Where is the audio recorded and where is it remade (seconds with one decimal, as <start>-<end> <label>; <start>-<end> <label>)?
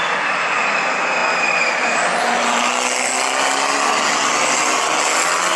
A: 0.0-5.6 recorded